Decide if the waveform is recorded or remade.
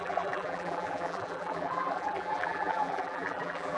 remade